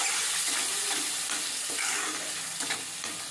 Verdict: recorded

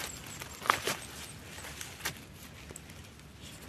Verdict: recorded